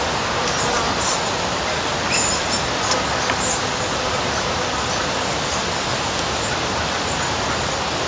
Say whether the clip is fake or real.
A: real